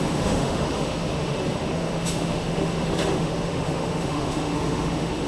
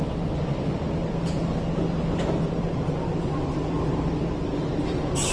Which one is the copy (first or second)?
first